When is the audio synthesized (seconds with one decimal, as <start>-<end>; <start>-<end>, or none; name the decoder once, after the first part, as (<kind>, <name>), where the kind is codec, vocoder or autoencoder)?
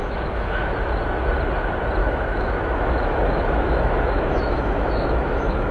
0.0-0.6 (autoencoder, DAC-VAE); 2.0-5.7